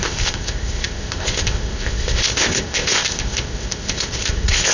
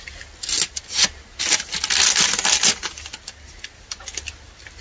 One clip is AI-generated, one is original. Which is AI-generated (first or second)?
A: first